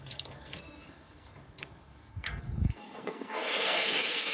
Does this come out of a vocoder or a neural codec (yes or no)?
yes